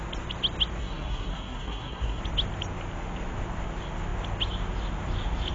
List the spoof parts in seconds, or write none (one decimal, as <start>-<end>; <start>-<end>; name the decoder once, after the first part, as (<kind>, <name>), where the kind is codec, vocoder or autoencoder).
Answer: 0.8-2.2 (codec, SNAC)